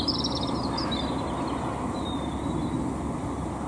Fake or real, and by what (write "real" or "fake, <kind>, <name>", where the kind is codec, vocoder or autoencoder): real